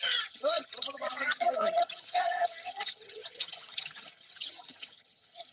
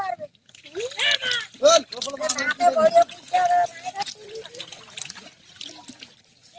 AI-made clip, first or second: first